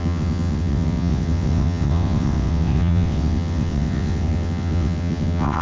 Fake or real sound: fake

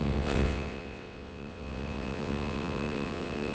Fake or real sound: fake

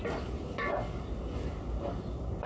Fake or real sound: real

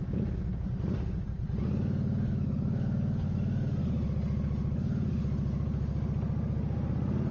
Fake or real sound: real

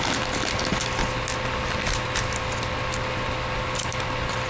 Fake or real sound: real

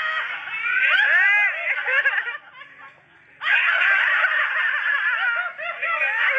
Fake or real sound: real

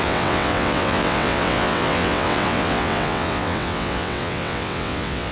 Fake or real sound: fake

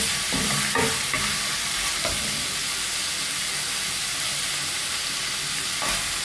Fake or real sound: real